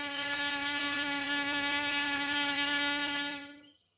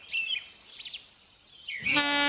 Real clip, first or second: second